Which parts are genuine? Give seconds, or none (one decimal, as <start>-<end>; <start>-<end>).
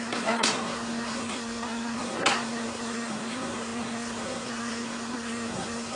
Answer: none